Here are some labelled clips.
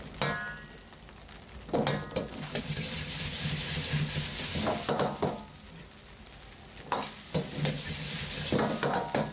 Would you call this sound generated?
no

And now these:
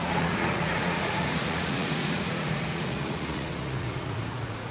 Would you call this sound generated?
yes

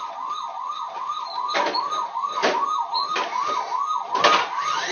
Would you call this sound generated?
no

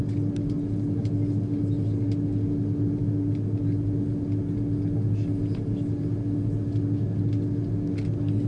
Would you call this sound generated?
no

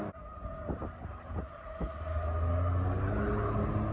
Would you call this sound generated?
no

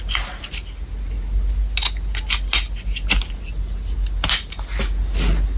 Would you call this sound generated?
no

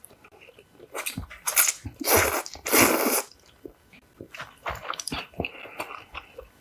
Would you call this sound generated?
no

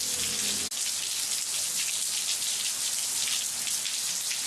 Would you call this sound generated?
no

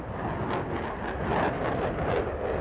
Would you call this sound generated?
no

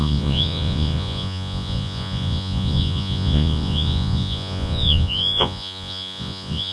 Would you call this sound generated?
yes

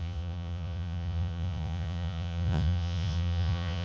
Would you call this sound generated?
yes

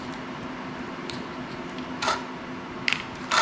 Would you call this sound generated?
no